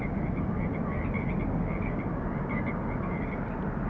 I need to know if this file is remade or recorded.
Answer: recorded